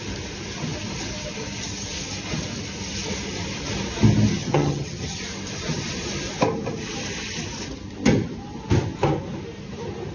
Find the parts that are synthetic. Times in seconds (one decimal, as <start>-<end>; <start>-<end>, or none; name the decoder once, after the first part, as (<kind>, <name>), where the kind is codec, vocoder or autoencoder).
4.3-5.2 (vocoder, HiFi-GAN)